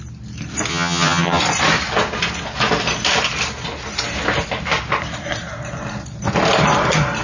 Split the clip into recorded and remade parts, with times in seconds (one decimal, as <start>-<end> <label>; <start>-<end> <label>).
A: 0.0-0.7 recorded; 0.7-1.4 remade; 1.4-7.2 recorded